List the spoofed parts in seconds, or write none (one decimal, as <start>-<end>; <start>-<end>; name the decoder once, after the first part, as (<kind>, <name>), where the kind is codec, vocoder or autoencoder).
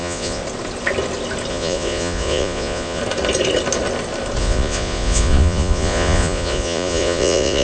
0.0-0.4 (vocoder, Vocos); 1.5-3.0; 4.4-7.6